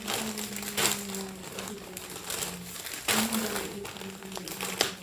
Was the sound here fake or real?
real